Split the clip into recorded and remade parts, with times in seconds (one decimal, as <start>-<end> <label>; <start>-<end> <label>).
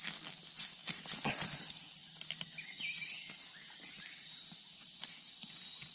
0.0-5.9 recorded